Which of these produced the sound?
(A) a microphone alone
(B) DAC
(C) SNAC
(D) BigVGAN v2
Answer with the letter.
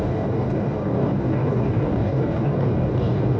B